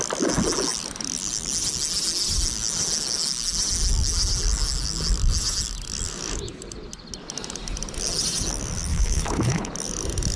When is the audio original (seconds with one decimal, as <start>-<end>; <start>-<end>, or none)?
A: 0.0-8.9; 9.7-10.4